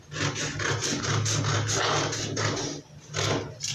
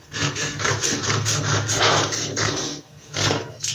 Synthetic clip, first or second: second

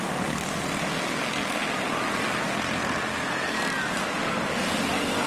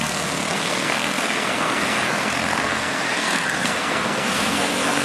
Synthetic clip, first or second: second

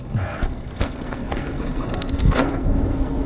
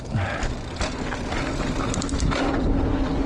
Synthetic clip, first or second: first